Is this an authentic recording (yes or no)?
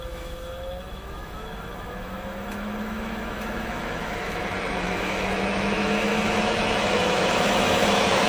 no